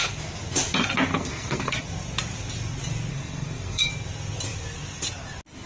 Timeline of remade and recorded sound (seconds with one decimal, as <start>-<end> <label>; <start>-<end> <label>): 0.0-1.1 recorded; 1.1-1.8 remade; 1.8-3.1 recorded; 3.1-3.9 remade; 3.9-5.7 recorded